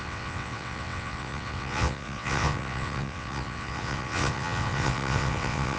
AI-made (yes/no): yes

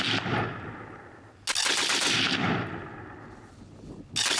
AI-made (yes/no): no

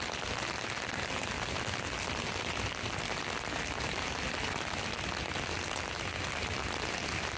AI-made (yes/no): no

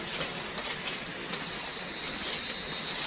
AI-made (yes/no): no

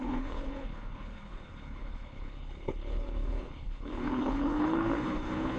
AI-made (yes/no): yes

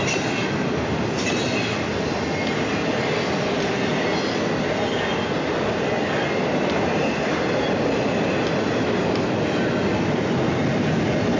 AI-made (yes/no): no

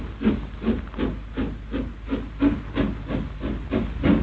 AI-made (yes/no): no